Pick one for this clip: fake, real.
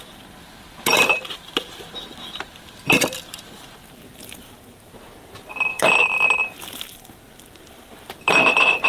fake